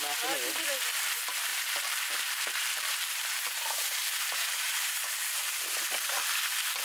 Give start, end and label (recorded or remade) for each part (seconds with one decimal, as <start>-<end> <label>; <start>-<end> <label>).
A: 0.0-1.5 recorded; 1.5-5.6 remade; 5.6-6.8 recorded